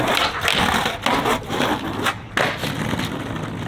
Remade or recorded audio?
recorded